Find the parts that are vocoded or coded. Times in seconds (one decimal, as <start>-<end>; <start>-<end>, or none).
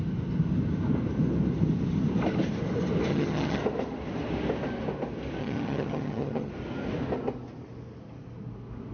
3.1-3.6; 5.4-6.5